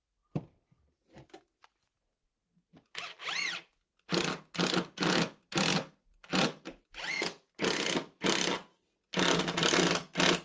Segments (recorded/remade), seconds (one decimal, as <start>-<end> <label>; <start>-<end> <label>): 0.0-2.7 recorded; 2.7-4.4 remade; 4.4-10.4 recorded